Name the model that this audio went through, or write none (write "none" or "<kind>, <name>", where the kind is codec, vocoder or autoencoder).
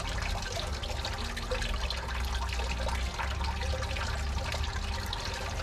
none